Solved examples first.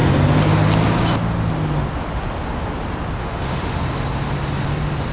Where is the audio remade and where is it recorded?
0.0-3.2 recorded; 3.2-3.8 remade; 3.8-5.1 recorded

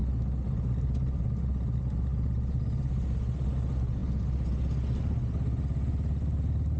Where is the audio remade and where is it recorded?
0.0-6.8 recorded

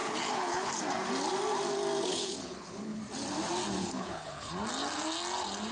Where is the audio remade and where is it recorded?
0.0-0.7 remade; 0.7-2.1 recorded; 2.1-3.0 remade; 3.0-3.8 recorded; 3.8-4.5 remade; 4.5-5.7 recorded

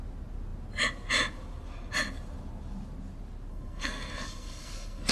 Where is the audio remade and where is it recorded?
0.0-3.5 recorded; 3.5-5.1 remade